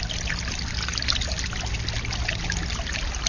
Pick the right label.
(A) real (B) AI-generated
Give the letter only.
A